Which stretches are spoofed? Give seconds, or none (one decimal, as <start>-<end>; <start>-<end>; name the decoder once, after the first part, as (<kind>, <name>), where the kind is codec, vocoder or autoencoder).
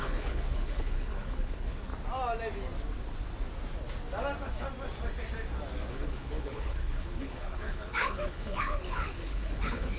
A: 0.0-1.9 (codec, HILCodec); 5.9-10.0